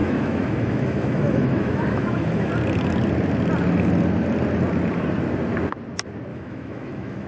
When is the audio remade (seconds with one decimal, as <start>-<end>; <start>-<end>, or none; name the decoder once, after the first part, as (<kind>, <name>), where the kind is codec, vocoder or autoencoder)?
0.0-2.5 (autoencoder, DAC-VAE); 6.3-7.3